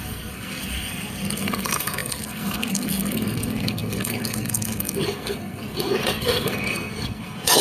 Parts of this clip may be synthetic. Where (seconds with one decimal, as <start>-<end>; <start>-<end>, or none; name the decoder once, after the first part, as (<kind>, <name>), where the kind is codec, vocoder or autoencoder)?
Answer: 0.0-7.6 (codec, SNAC)